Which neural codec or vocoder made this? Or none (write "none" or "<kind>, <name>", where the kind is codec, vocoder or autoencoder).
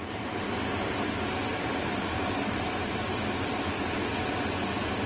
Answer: none